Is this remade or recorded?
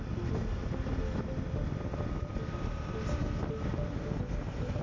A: recorded